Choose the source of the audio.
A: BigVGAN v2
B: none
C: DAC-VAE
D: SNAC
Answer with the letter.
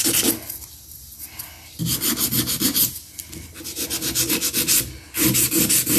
B